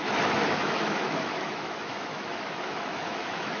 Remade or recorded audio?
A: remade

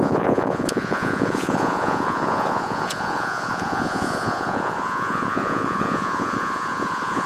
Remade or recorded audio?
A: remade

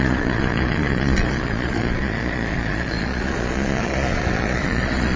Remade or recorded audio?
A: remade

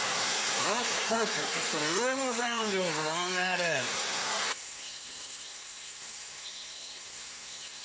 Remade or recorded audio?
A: remade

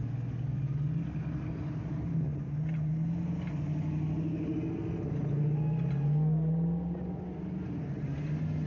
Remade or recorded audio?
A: recorded